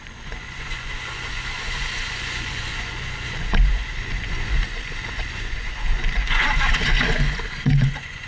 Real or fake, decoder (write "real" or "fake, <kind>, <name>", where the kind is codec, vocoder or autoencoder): fake, vocoder, Vocos